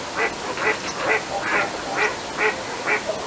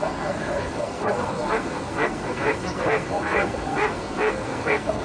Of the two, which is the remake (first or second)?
second